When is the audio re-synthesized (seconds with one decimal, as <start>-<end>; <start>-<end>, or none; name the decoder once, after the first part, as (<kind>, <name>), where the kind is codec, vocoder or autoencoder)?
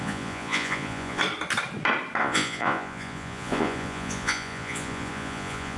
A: 0.0-1.2 (vocoder, Vocos); 2.2-5.8